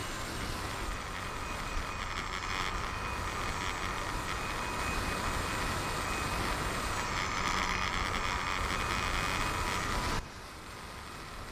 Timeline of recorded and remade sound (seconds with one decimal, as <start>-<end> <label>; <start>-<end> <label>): 0.0-11.5 recorded